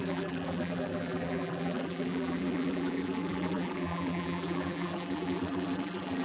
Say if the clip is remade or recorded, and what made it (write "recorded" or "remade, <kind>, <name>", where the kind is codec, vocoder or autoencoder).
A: remade, vocoder, BigVGAN v2